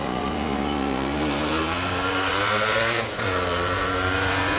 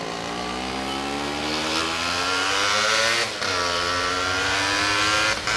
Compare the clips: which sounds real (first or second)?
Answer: second